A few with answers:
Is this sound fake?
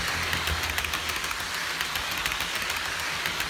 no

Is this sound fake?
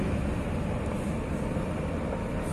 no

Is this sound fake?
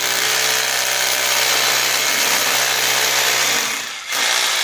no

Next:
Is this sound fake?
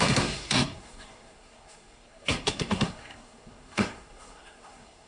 yes